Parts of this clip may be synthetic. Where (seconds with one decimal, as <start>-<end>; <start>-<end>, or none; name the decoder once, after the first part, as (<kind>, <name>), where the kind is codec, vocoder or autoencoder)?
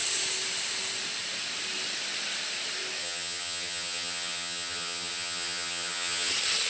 3.0-6.3 (vocoder, HiFi-GAN)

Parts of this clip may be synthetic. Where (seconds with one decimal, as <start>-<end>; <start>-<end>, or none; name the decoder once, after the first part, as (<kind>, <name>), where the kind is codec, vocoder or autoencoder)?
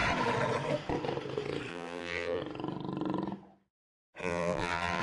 1.7-2.4 (vocoder, BigVGAN v2); 4.2-5.0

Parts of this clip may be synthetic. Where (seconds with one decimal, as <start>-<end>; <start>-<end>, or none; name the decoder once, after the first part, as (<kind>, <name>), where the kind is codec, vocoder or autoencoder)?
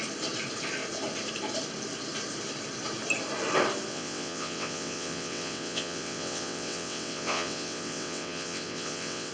3.9-9.3 (vocoder, WaveNeXt)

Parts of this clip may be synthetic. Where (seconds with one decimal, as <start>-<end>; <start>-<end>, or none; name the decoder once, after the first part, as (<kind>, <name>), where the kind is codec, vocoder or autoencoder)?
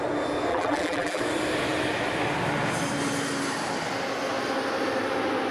0.5-1.2 (vocoder, BigVGAN v2)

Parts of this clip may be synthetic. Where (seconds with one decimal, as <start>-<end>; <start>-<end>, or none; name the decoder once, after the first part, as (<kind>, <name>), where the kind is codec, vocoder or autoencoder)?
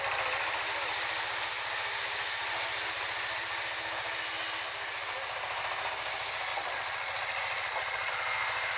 6.5-8.1 (vocoder, Vocos)